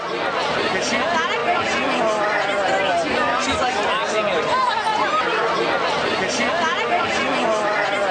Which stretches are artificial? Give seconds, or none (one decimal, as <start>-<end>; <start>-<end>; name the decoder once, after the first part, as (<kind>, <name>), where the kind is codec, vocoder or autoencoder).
4.9-5.4 (vocoder, BigVGAN v2)

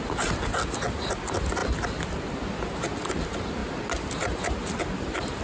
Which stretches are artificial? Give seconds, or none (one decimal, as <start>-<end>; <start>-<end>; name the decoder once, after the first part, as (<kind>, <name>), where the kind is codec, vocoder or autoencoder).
none